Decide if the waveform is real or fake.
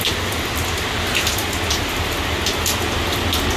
real